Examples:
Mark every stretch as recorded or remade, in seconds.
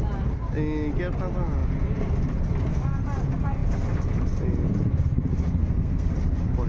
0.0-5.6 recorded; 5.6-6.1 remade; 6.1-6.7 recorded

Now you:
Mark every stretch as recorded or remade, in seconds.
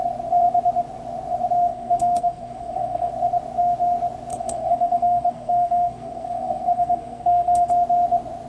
0.0-1.7 recorded; 1.7-3.1 remade; 3.1-4.3 recorded; 4.3-7.7 remade; 7.7-8.5 recorded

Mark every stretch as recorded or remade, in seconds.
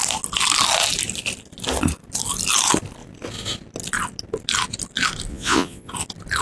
0.0-5.3 recorded; 5.3-5.9 remade; 5.9-6.4 recorded